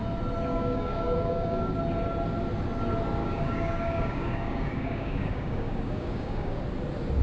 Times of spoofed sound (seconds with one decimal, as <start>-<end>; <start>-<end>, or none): 0.5-1.8; 3.2-6.6